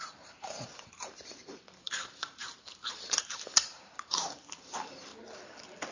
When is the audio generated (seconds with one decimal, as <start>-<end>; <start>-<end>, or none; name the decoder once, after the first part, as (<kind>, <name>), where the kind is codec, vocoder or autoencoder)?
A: 0.0-5.1 (vocoder, BigVGAN v2)